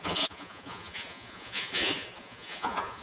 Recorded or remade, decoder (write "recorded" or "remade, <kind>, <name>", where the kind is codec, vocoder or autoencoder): remade, vocoder, Vocos